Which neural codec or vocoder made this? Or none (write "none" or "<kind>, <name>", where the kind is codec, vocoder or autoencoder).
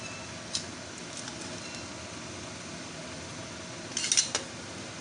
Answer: none